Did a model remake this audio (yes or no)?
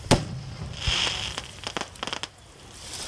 no